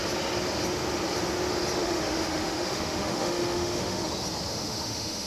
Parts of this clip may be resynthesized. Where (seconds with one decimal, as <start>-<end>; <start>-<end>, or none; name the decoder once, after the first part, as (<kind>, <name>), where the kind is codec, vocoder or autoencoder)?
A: 1.8-4.1 (autoencoder, DAC-VAE); 4.5-5.3

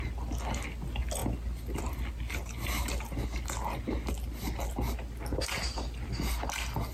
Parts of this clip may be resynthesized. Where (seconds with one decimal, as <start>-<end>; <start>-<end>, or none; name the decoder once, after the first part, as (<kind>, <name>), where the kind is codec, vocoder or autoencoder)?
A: none

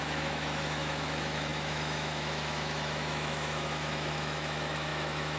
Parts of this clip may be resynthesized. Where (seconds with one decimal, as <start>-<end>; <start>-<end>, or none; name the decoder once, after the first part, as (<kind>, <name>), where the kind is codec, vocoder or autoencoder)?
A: 0.0-5.4 (autoencoder, DAC-VAE)